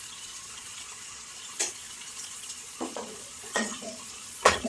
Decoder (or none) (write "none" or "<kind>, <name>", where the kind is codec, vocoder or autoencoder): vocoder, Vocos